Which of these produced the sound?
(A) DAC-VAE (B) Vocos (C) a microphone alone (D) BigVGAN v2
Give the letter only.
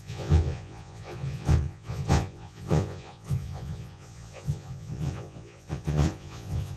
B